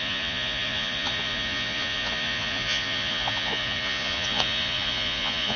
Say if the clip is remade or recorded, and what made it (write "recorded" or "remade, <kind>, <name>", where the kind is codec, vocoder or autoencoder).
remade, vocoder, Vocos